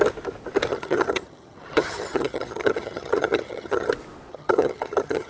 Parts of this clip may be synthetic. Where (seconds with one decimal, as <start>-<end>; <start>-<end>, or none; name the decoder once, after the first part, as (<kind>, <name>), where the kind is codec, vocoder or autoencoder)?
0.7-3.9 (vocoder, HiFi-GAN); 4.3-5.3